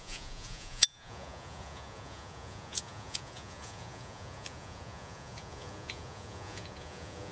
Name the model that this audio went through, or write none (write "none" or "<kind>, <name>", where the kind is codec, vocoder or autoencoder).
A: vocoder, Vocos